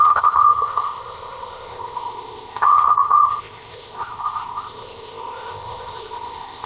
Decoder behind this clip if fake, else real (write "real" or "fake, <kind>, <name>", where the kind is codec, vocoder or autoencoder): fake, codec, ZipCodec